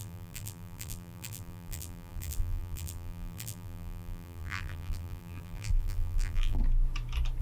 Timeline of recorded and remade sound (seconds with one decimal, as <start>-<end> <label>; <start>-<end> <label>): 0.0-6.6 remade; 6.6-7.4 recorded

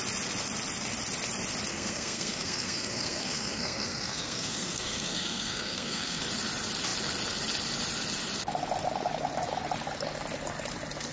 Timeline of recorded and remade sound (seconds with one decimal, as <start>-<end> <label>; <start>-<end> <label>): 0.0-1.7 recorded; 1.7-6.2 remade; 6.2-11.1 recorded

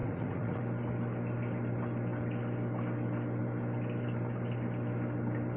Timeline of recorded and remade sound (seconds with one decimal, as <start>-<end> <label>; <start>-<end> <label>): 0.0-0.6 remade; 0.6-5.6 recorded

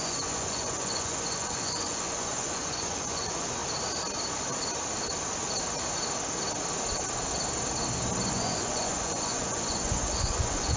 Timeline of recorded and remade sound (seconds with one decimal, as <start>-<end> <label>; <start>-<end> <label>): 0.0-3.6 remade; 3.6-8.3 recorded; 8.3-10.8 remade

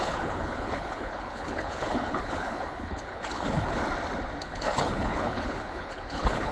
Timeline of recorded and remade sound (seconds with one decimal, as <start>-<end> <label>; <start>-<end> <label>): 0.0-3.8 remade; 3.8-4.4 recorded; 4.4-6.5 remade

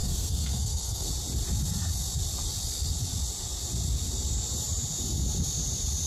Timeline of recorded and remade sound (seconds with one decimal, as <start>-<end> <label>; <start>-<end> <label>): 0.0-1.1 remade; 1.1-6.1 recorded